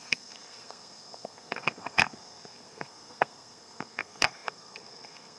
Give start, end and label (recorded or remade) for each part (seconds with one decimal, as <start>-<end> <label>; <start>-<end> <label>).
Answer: 0.0-5.4 remade